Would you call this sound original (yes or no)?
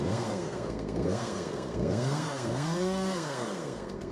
no